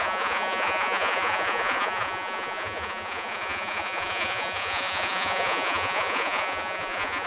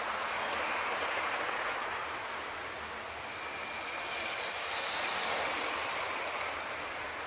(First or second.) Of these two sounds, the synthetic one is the first